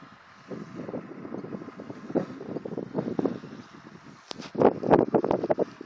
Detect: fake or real real